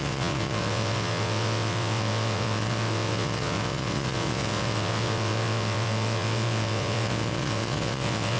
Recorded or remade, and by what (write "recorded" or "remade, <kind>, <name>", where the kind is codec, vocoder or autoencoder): remade, vocoder, WaveNeXt